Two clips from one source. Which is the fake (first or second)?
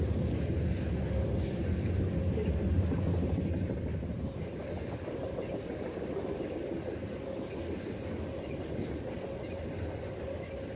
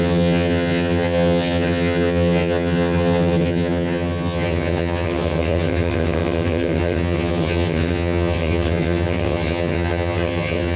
second